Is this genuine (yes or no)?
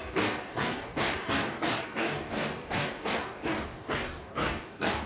no